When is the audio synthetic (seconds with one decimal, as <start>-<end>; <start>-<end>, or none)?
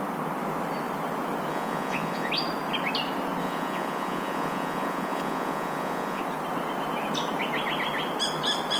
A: 1.5-2.3; 3.4-6.2